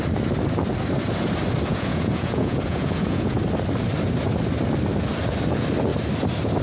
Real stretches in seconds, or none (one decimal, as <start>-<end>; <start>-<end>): 0.0-1.7; 3.4-6.6